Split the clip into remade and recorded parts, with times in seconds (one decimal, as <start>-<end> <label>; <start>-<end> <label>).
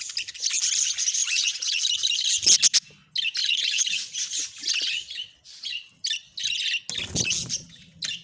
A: 0.0-1.2 recorded; 1.2-1.8 remade; 1.8-3.4 recorded; 3.4-4.6 remade; 4.6-8.2 recorded